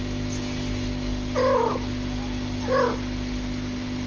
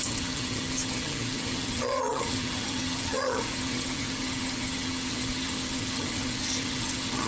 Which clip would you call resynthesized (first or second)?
second